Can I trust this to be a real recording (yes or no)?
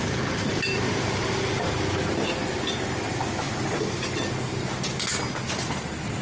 yes